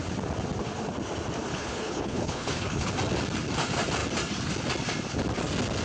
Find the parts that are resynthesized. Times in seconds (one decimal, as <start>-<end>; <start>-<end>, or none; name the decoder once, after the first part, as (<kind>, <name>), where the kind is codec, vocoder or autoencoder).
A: 1.5-2.9 (codec, HILCodec)

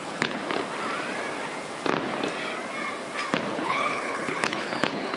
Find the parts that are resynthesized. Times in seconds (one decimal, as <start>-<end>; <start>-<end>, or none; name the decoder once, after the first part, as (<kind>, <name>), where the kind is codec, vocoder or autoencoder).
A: 0.0-0.4 (codec, HILCodec); 3.5-5.2

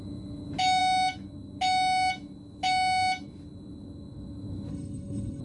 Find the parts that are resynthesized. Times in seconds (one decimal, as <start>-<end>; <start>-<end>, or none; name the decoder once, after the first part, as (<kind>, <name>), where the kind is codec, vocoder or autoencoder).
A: 4.7-5.4 (codec, HILCodec)

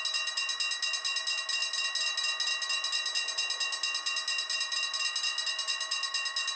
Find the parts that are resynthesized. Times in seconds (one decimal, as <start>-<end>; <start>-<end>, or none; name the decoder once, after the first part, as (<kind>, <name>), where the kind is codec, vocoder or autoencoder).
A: none

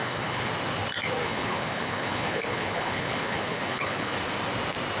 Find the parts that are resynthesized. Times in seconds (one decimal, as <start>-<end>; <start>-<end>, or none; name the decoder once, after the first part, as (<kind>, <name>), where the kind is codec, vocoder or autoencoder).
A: 0.0-0.5 (codec, HILCodec); 1.2-4.2